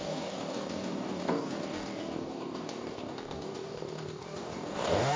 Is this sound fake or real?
fake